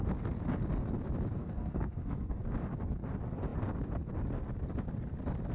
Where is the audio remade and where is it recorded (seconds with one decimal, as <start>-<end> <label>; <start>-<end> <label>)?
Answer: 0.0-1.4 recorded; 1.4-2.4 remade; 2.4-5.5 recorded